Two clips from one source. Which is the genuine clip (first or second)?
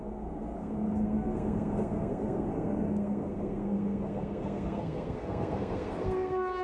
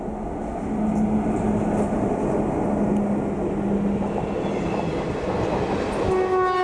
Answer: second